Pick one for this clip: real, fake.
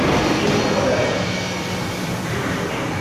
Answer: real